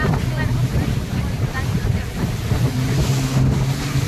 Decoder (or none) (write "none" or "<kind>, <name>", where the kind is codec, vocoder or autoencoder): none